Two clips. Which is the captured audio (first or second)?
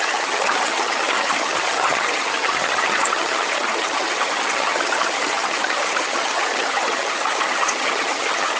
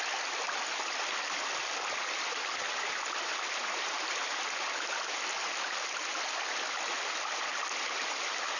second